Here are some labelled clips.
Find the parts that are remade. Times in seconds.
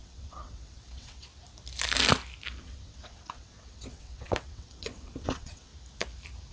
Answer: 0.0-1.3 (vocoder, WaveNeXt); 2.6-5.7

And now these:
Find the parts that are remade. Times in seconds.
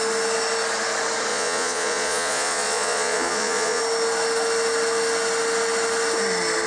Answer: 1.3-3.8 (vocoder, Vocos)